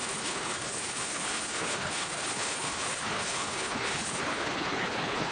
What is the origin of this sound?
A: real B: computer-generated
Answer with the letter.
B